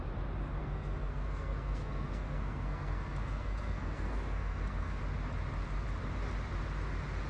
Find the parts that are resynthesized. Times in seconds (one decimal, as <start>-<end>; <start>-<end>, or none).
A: 0.6-5.0